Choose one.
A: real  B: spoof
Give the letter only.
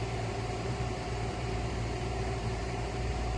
B